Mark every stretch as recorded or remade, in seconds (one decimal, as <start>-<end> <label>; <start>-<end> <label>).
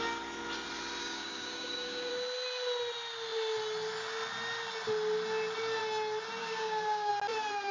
0.0-1.0 recorded; 1.0-2.1 remade; 2.1-6.4 recorded; 6.4-7.1 remade; 7.1-7.7 recorded